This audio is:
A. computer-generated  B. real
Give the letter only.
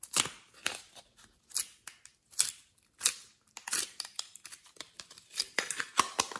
B